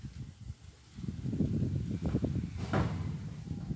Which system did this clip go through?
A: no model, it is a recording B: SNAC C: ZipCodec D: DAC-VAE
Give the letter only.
A